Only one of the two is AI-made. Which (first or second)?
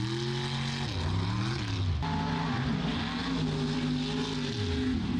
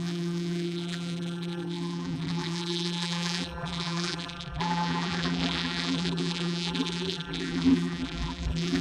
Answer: second